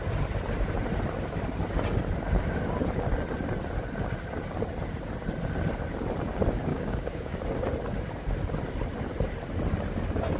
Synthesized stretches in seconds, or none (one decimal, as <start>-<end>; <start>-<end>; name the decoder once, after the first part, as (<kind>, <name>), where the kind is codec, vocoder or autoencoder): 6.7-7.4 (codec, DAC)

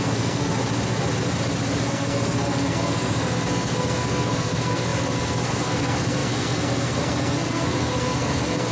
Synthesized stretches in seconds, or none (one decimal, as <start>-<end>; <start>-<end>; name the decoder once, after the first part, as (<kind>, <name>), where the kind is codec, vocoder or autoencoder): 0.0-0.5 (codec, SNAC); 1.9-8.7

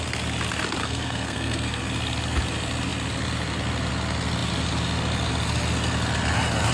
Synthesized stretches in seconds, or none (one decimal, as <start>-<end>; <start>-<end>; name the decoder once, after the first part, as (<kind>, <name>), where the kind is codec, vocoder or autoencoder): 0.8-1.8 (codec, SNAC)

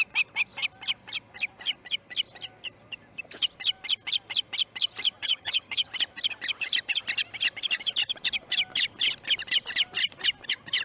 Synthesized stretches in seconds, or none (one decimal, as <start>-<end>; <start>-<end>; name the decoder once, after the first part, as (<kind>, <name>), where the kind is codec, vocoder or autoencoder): 5.2-5.9 (vocoder, HiFi-GAN)

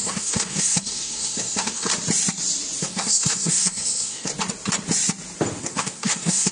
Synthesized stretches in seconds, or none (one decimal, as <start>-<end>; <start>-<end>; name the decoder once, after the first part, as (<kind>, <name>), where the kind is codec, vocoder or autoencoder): 0.0-1.9 (codec, SNAC); 2.8-4.3; 5.6-6.5